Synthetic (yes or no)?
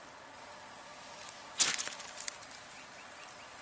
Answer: no